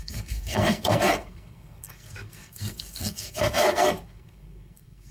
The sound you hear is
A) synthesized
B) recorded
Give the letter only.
A